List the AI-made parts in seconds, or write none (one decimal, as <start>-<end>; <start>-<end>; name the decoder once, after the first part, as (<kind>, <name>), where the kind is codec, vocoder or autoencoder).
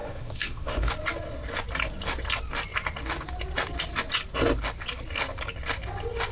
0.0-0.9 (autoencoder, DAC-VAE)